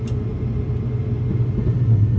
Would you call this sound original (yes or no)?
yes